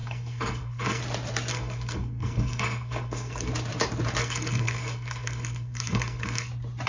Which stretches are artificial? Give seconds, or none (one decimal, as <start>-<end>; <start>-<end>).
0.0-1.0; 1.5-3.5; 4.2-6.5